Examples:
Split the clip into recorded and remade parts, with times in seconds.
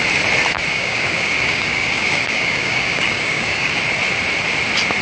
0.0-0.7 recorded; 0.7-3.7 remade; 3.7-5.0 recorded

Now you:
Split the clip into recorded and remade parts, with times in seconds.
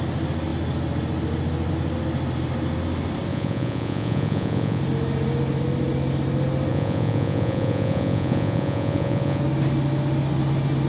0.0-3.3 recorded; 3.3-4.8 remade; 4.8-6.7 recorded; 6.7-9.4 remade; 9.4-10.9 recorded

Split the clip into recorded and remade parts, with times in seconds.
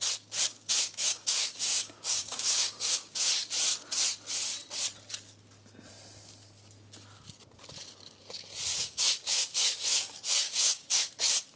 0.0-0.7 recorded; 0.7-3.3 remade; 3.3-8.7 recorded; 8.7-11.0 remade; 11.0-11.6 recorded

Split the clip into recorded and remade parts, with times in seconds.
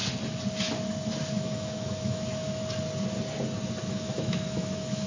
0.0-1.3 recorded; 1.3-2.6 remade; 2.6-4.0 recorded; 4.0-5.1 remade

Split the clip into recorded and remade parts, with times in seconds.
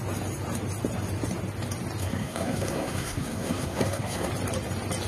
0.0-2.0 recorded; 2.0-4.3 remade; 4.3-5.1 recorded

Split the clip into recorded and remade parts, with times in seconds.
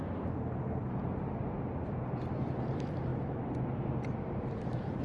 0.0-5.0 recorded